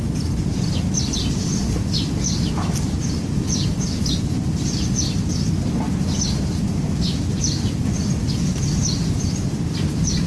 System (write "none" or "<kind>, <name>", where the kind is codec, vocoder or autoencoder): none